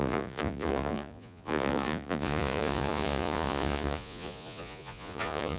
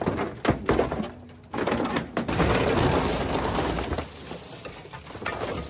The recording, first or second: second